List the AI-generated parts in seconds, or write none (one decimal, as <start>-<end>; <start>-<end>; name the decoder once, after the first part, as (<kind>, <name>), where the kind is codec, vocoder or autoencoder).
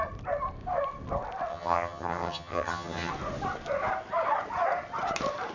1.5-3.1 (vocoder, HiFi-GAN)